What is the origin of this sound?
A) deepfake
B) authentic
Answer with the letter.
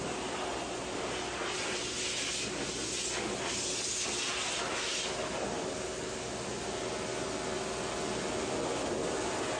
B